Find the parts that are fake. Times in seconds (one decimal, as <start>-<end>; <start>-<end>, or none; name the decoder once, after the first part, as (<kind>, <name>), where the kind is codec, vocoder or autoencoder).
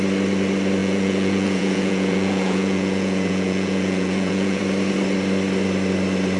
0.8-4.6 (vocoder, Vocos)